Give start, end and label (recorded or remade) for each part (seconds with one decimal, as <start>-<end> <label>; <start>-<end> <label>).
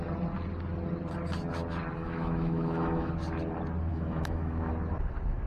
0.0-2.0 recorded; 2.0-3.1 remade; 3.1-3.9 recorded; 3.9-4.7 remade; 4.7-5.5 recorded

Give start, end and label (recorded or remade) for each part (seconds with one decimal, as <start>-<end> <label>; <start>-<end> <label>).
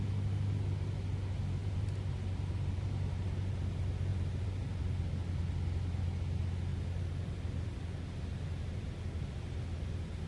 0.0-1.6 recorded; 1.6-3.5 remade; 3.5-4.1 recorded; 4.1-4.8 remade; 4.8-6.7 recorded; 6.7-7.3 remade; 7.3-10.3 recorded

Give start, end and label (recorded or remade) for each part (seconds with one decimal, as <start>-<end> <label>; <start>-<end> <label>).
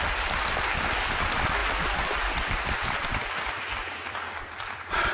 0.0-5.1 recorded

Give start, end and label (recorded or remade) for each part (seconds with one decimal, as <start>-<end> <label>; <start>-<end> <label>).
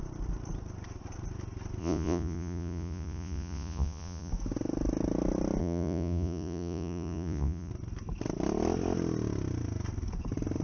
0.0-1.8 recorded; 1.8-4.3 remade; 4.3-5.6 recorded; 5.6-7.7 remade; 7.7-10.6 recorded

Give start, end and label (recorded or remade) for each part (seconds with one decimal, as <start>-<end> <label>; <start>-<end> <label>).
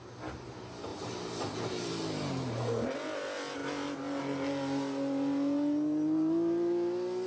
0.0-0.9 recorded; 0.9-1.7 remade; 1.7-7.3 recorded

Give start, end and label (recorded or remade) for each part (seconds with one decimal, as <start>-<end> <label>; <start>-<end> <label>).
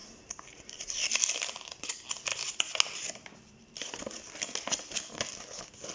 0.0-5.9 recorded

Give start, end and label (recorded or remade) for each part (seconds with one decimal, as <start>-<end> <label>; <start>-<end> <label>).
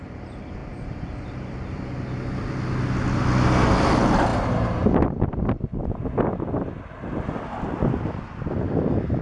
0.0-9.2 recorded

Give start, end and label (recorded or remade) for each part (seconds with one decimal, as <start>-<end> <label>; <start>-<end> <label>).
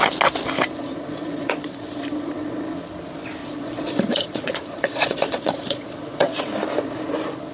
0.0-0.8 recorded; 0.8-2.6 remade; 2.6-3.4 recorded; 3.4-6.5 remade; 6.5-7.5 recorded